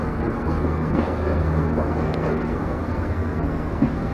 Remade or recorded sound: remade